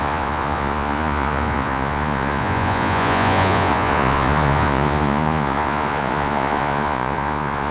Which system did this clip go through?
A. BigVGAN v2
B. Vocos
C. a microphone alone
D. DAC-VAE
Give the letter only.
B